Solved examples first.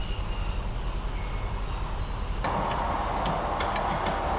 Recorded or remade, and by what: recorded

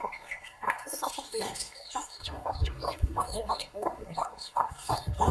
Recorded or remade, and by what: remade, codec, SNAC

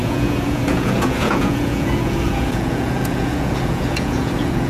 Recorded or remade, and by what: remade, vocoder, Vocos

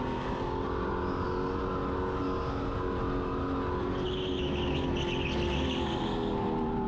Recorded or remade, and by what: recorded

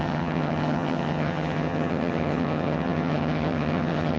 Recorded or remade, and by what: remade, vocoder, HiFi-GAN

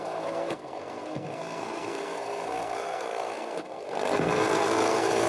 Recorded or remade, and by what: remade, codec, SNAC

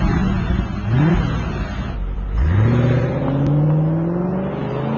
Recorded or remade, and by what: recorded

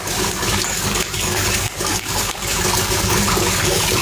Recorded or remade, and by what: remade, codec, DAC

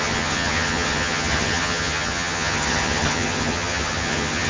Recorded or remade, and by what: remade, vocoder, HiFi-GAN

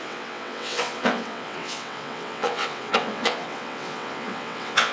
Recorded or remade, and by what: remade, vocoder, WaveNeXt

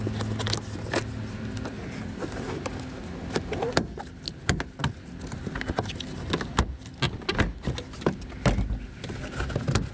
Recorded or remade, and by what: recorded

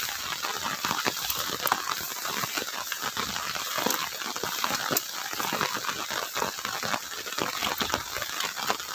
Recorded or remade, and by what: recorded